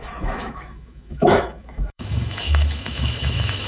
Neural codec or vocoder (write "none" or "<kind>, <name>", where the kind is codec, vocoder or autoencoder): autoencoder, DAC-VAE